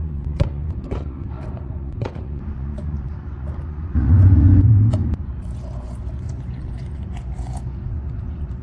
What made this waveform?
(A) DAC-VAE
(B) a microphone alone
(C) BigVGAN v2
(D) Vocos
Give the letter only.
D